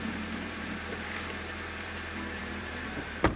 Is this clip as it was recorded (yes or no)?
no